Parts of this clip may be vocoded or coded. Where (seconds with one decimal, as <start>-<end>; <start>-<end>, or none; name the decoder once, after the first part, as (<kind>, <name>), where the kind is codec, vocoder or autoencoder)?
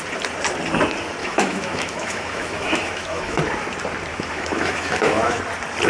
1.2-3.4 (autoencoder, DAC-VAE); 4.1-5.4